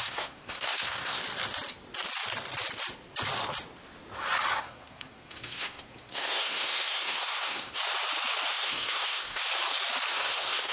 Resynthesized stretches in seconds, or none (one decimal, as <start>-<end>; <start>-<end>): 0.0-1.2; 4.6-7.8; 8.5-9.4; 10.1-10.7